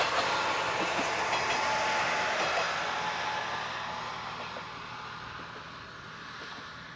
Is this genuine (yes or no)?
yes